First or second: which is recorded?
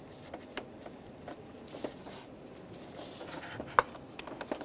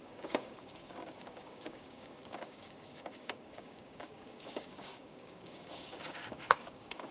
first